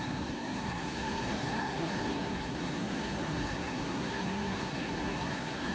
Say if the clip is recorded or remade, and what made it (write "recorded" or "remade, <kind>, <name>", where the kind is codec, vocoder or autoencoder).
remade, codec, SNAC